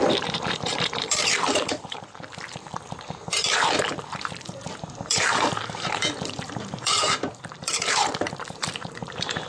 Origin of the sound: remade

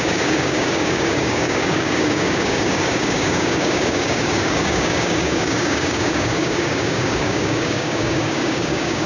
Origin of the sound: remade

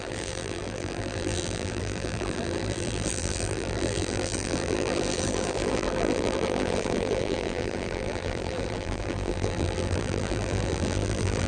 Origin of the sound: remade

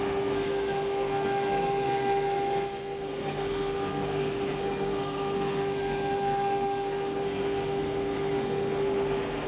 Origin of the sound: remade